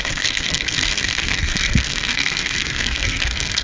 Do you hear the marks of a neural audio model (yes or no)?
yes